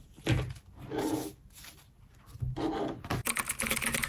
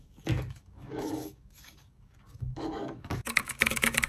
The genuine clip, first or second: first